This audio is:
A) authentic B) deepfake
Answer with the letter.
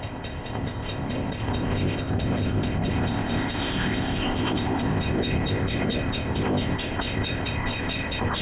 B